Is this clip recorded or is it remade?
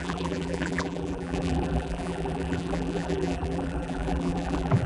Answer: remade